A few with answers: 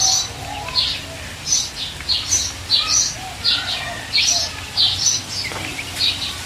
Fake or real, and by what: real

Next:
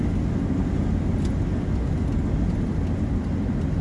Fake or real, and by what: real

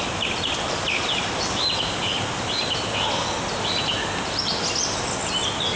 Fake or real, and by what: real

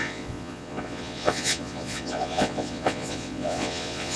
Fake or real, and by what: fake, vocoder, Vocos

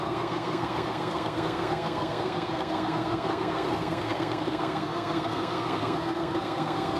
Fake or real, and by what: fake, codec, SNAC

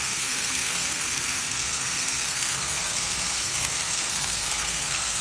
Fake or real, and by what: fake, codec, SNAC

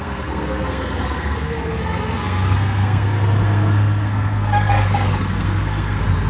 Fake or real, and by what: fake, codec, SNAC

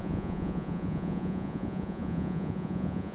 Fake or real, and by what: fake, vocoder, Vocos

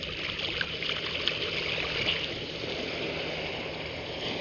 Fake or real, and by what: real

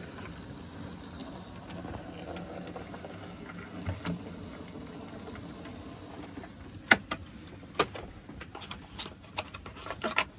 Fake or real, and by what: real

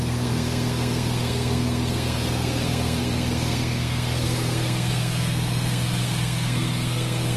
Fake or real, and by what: fake, codec, SNAC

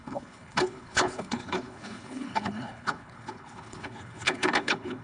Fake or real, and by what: fake, codec, HILCodec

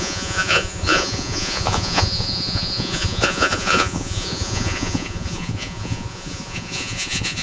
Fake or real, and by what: fake, vocoder, Vocos